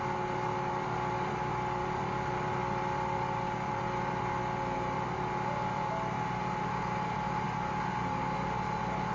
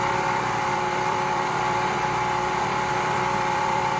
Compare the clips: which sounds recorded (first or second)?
first